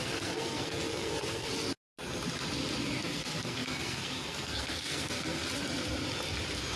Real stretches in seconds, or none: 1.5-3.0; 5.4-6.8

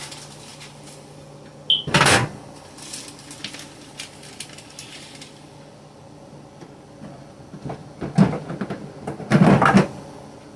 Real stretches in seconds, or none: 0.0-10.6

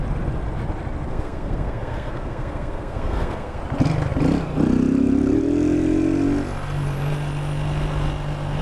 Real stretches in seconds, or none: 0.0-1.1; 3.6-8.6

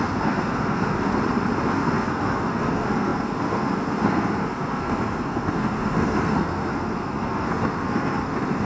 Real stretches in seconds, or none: 1.1-1.6